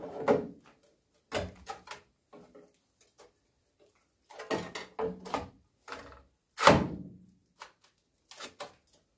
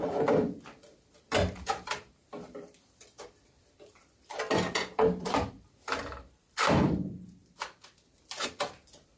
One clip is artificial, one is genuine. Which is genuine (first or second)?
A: first